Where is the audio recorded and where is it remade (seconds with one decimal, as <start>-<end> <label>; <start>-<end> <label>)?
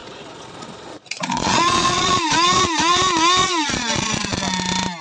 0.0-3.0 remade; 3.0-3.4 recorded; 3.4-4.4 remade; 4.4-5.0 recorded